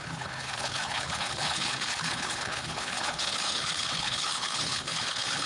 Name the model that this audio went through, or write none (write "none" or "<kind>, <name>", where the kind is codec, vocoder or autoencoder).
codec, HILCodec